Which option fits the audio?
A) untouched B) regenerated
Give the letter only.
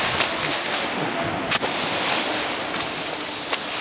A